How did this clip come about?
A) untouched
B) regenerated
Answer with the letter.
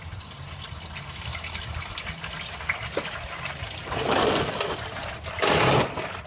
A